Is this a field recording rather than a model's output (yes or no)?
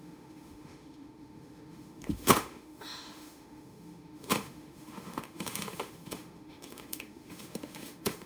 no